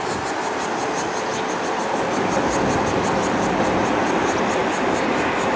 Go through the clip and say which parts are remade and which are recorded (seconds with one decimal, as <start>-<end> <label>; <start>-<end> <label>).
0.0-5.6 recorded